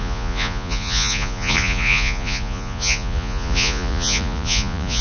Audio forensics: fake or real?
fake